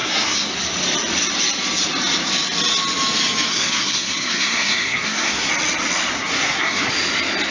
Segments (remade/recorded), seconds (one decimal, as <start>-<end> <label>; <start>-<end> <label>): 0.0-0.5 remade; 0.5-3.5 recorded; 3.5-5.5 remade; 5.5-6.1 recorded; 6.1-6.9 remade; 6.9-7.5 recorded